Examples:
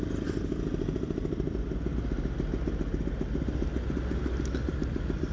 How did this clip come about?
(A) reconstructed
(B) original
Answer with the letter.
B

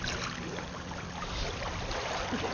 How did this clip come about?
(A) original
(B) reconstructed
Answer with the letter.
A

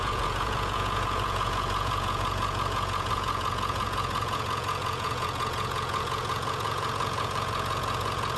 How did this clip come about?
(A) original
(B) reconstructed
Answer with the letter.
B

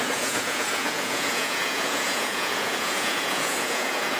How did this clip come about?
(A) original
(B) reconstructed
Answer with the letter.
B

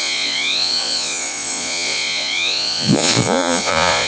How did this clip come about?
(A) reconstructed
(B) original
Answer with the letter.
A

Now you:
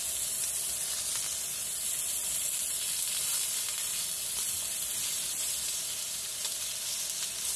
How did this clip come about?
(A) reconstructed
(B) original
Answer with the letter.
B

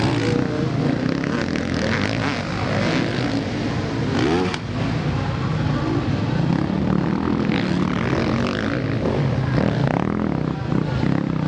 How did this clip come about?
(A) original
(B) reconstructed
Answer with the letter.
A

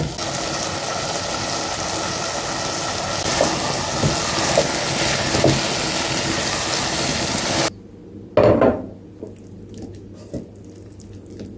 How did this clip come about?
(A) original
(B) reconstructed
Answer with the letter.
A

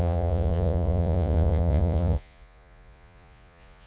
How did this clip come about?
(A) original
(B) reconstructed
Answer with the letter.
B